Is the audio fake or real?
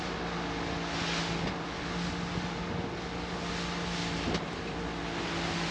real